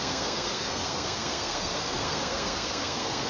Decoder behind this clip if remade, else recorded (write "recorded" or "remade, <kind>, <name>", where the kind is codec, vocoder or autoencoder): remade, codec, SNAC